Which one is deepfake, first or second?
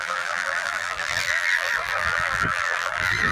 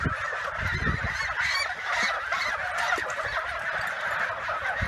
first